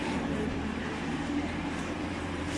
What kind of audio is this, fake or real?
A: fake